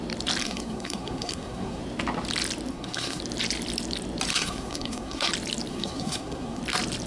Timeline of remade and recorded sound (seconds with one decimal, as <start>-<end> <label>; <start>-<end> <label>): 0.0-0.4 recorded; 0.4-1.8 remade; 1.8-2.7 recorded; 2.7-3.2 remade; 3.2-4.3 recorded; 4.3-5.3 remade; 5.3-5.7 recorded; 5.7-6.6 remade; 6.6-7.1 recorded